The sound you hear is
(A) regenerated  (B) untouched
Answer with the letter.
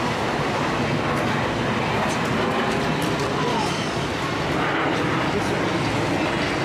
B